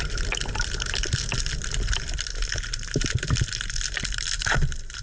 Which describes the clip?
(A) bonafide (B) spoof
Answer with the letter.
A